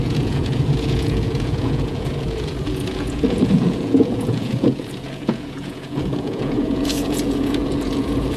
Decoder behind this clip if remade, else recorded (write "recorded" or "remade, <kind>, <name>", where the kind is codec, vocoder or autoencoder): remade, vocoder, Vocos